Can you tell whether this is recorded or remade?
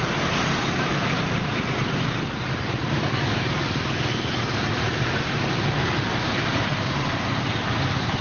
remade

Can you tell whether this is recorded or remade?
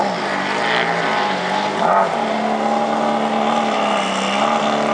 recorded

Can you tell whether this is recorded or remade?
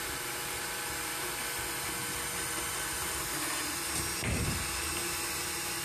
recorded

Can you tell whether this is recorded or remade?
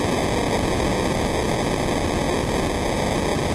recorded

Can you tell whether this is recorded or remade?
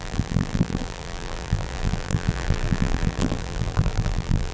remade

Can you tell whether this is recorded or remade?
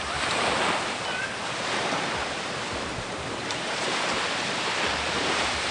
remade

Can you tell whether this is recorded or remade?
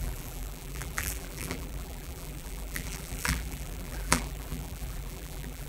remade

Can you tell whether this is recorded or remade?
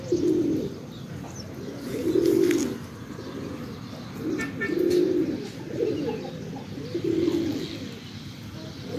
recorded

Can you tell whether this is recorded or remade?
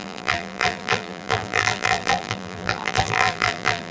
remade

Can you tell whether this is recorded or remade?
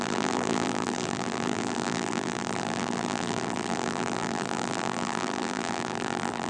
remade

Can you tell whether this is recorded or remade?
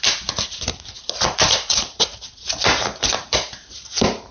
remade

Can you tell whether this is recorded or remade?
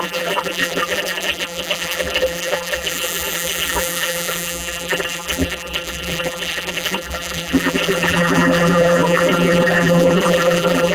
remade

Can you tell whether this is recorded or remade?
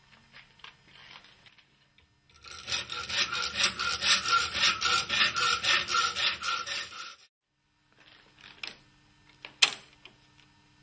recorded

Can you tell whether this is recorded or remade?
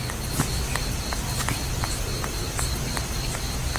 recorded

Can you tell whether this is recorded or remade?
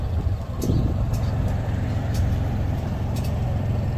remade